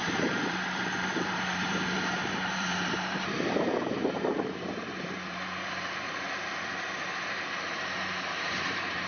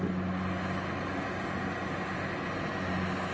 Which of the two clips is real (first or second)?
second